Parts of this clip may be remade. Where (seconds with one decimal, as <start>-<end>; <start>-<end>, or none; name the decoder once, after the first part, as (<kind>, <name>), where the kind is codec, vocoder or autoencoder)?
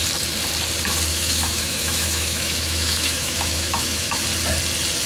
1.1-4.2 (autoencoder, DAC-VAE)